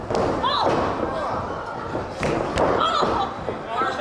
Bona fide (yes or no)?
yes